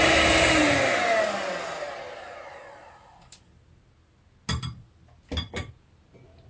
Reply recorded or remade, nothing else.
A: recorded